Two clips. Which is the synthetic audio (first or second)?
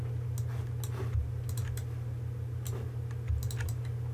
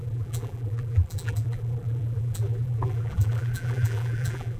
second